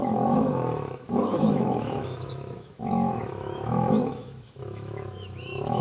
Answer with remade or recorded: remade